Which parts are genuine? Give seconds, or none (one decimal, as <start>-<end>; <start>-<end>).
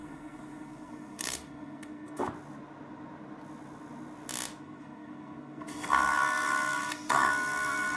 2.2-4.6